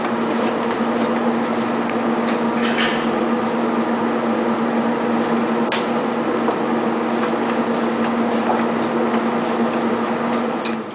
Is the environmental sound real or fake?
real